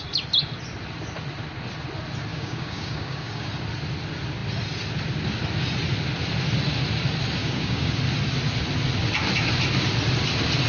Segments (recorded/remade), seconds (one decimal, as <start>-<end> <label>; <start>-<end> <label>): 0.0-2.3 recorded; 2.3-3.5 remade; 3.5-7.4 recorded; 7.4-7.9 remade; 7.9-10.7 recorded

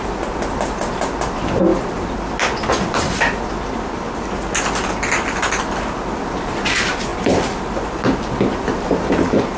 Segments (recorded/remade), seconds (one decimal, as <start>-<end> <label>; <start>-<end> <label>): 0.0-9.6 recorded

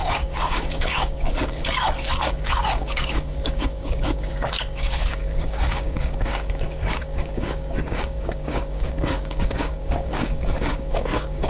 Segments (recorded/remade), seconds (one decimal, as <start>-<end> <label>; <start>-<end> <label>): 0.0-11.5 remade

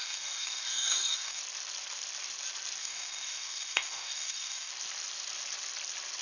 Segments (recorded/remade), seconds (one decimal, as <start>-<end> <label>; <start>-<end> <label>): 0.0-1.4 remade; 1.4-2.8 recorded; 2.8-4.7 remade; 4.7-6.2 recorded

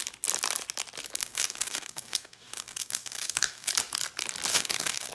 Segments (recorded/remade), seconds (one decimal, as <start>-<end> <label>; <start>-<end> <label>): 0.0-1.2 recorded; 1.2-3.7 remade; 3.7-4.5 recorded; 4.5-5.1 remade

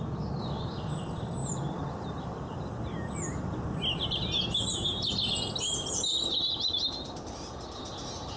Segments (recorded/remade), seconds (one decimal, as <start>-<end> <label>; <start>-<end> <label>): 0.0-8.4 recorded

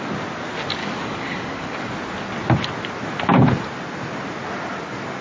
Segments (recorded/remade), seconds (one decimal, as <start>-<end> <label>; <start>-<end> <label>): 0.0-0.8 recorded; 0.8-1.9 remade; 1.9-5.2 recorded